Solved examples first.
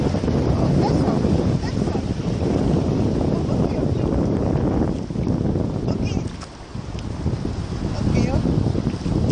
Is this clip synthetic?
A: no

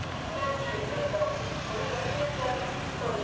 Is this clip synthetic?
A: no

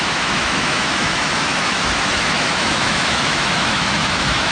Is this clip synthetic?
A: yes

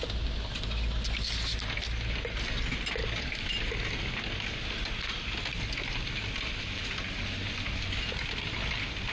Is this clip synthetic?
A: no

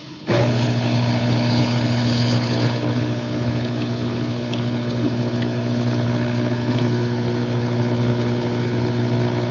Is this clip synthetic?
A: yes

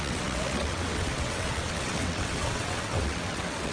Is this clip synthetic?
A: yes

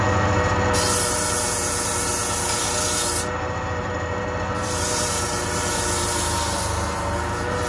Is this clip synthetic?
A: no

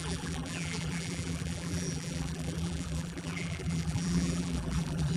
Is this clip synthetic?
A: yes